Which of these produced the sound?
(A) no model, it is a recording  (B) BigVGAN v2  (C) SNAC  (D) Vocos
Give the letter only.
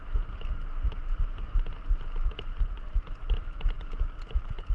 A